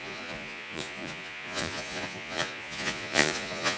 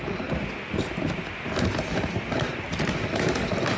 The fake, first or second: first